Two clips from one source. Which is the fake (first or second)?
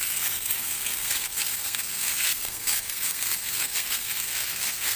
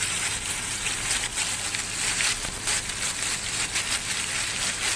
first